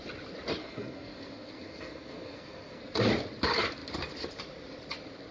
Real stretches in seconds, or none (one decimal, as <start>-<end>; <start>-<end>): 0.0-0.6; 2.8-5.3